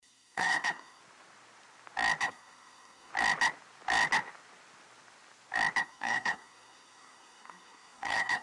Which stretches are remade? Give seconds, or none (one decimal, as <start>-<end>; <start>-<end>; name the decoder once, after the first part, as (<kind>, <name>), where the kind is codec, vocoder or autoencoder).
0.0-1.0 (codec, SNAC); 2.2-3.1; 5.8-8.4